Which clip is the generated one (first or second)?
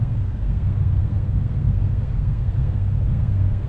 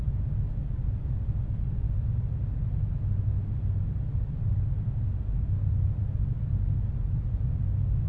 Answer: first